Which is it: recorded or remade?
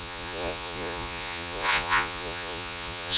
remade